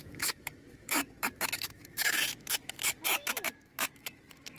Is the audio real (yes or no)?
no